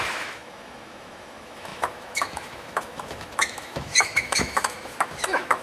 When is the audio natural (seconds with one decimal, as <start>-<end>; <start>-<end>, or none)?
none